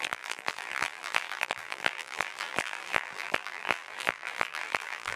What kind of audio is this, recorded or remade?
remade